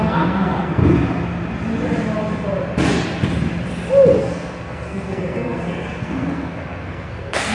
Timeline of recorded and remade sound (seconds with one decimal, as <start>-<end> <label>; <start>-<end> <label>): 0.0-0.8 remade; 0.8-4.2 recorded; 4.2-7.5 remade

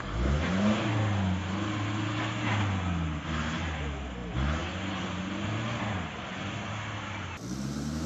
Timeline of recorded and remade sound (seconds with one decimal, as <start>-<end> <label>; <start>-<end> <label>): 0.0-8.1 recorded

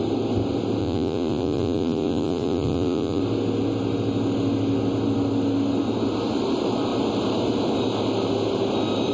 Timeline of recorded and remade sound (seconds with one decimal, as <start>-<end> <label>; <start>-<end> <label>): 0.0-0.8 recorded; 0.8-3.2 remade; 3.2-9.1 recorded